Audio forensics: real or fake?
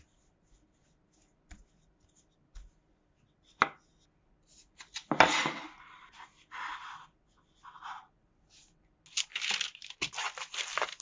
real